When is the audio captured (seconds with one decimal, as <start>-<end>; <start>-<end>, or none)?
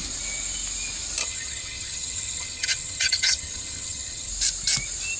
0.0-1.2; 4.3-5.2